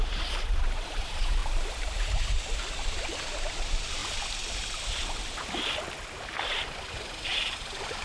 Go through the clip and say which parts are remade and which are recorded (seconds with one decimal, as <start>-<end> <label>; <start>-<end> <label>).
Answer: 0.0-4.0 remade; 4.0-6.4 recorded; 6.4-8.0 remade